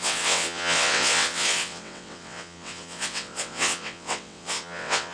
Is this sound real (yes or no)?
no